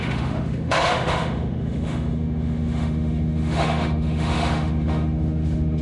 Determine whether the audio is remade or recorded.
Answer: remade